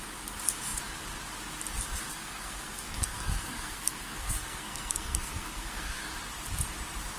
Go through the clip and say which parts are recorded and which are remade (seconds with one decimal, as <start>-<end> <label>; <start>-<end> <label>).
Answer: 0.0-2.1 recorded; 2.1-6.1 remade; 6.1-7.2 recorded